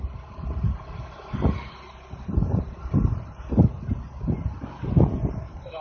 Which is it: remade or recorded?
recorded